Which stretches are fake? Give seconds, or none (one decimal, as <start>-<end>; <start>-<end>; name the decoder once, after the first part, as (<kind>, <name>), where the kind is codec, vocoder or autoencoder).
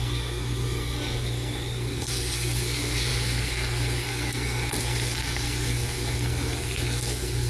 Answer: 0.0-7.5 (codec, SNAC)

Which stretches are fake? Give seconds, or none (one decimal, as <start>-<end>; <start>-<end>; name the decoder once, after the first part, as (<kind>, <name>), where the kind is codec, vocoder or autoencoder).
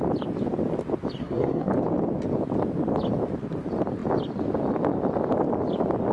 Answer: 1.2-1.7 (codec, SNAC)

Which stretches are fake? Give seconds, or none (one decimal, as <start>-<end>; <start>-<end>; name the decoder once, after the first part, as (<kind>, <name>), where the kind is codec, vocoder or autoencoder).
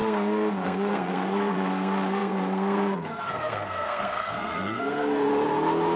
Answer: 0.0-5.3 (codec, SNAC)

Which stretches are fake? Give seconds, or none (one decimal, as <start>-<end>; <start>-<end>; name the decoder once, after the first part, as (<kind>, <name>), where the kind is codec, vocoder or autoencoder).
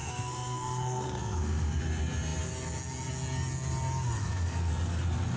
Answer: 0.0-1.8 (codec, SNAC); 4.2-4.7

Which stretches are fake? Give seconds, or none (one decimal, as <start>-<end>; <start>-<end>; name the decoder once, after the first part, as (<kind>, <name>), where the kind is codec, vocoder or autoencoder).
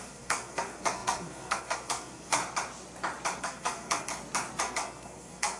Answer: 0.0-2.4 (codec, SNAC); 3.4-4.1; 4.6-5.6